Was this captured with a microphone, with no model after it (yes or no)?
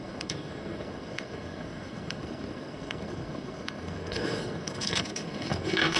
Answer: no